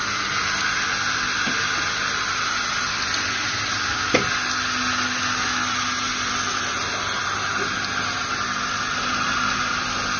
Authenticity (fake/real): real